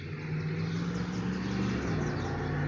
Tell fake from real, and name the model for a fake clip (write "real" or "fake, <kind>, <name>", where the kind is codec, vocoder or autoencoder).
real